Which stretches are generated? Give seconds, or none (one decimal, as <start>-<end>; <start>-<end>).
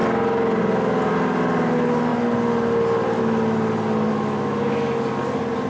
4.1-5.0